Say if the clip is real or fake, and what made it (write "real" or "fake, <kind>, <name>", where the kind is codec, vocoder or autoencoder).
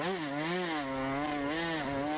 real